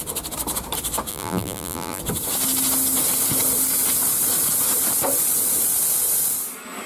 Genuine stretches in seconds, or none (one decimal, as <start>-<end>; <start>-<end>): 0.0-1.1; 2.0-6.9